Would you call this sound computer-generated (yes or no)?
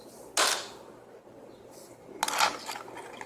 no